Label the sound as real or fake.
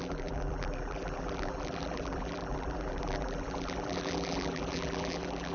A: fake